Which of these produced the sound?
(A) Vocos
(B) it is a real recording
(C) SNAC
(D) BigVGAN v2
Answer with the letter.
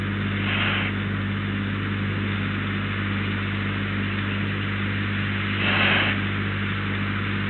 B